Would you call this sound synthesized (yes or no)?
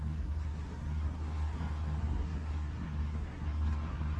yes